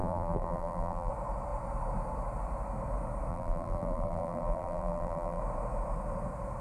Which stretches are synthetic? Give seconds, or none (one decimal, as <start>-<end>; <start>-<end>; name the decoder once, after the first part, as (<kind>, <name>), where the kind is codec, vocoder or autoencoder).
0.0-1.1 (vocoder, BigVGAN v2); 3.3-5.4